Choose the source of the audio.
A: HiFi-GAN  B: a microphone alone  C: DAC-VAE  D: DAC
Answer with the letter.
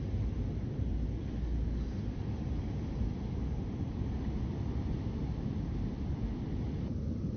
B